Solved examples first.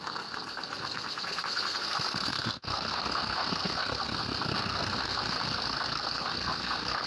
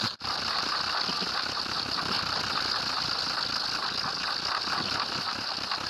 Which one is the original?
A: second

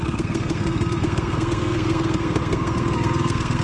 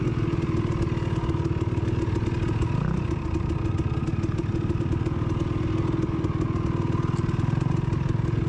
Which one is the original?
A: second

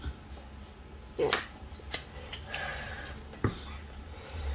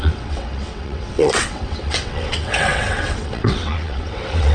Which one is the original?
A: first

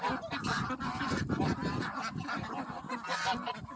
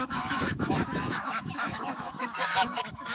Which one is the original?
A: first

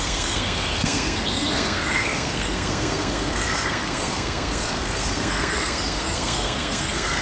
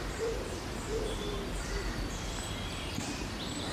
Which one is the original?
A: second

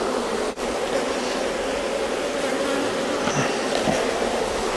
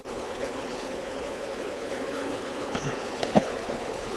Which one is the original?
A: first